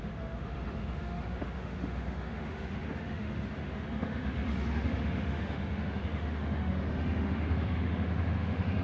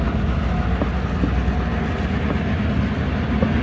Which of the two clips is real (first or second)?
second